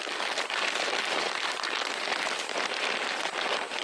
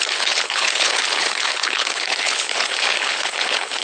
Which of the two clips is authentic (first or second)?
first